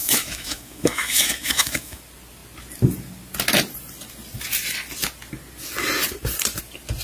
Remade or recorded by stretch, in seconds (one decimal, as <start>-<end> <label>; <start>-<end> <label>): 0.0-2.0 remade; 2.0-7.0 recorded

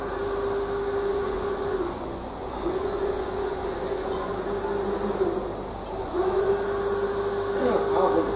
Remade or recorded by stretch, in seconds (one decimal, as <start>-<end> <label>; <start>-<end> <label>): 0.0-1.1 recorded; 1.1-4.3 remade; 4.3-6.0 recorded; 6.0-6.5 remade; 6.5-8.4 recorded

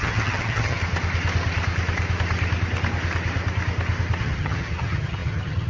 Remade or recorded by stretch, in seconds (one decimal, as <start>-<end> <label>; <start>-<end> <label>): 0.0-0.8 remade; 0.8-4.2 recorded; 4.2-5.7 remade

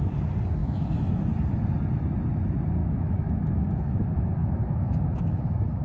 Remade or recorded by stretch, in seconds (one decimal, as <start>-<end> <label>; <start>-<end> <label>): 0.0-0.6 recorded; 0.6-1.2 remade; 1.2-2.8 recorded; 2.8-5.8 remade

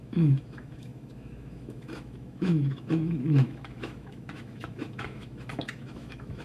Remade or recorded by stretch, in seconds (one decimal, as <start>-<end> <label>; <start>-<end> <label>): 0.0-6.4 remade

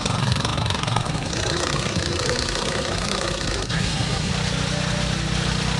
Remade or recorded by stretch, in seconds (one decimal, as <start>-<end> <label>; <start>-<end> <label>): 0.0-4.3 remade; 4.3-5.8 recorded

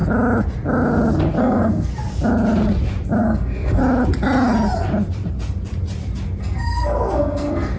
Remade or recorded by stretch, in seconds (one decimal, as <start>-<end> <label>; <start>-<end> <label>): 0.0-1.4 recorded; 1.4-1.9 remade; 1.9-3.2 recorded; 3.2-3.8 remade; 3.8-6.4 recorded; 6.4-7.8 remade

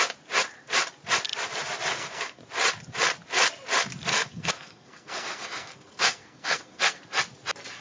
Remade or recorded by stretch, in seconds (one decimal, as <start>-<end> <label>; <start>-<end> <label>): 0.0-1.9 recorded; 1.9-2.4 remade; 2.4-4.1 recorded; 4.1-7.0 remade; 7.0-7.8 recorded